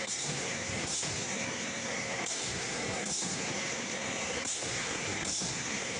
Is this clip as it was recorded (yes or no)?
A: no